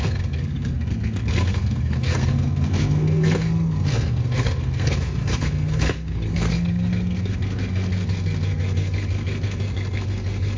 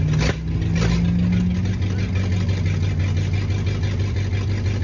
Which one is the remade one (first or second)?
first